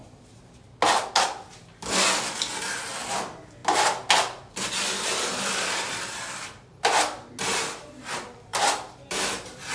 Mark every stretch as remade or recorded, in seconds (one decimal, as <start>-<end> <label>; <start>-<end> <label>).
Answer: 0.0-8.5 recorded; 8.5-9.7 remade